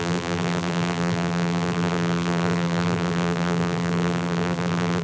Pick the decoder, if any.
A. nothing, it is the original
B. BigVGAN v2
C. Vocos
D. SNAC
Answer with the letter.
B